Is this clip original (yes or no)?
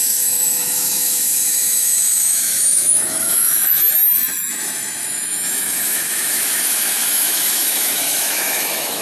no